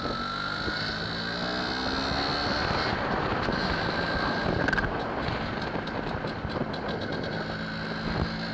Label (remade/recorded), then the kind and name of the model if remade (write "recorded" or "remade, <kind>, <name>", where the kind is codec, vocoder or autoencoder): recorded